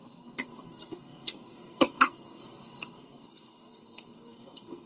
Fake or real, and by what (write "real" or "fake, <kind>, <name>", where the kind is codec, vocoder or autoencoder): fake, codec, SNAC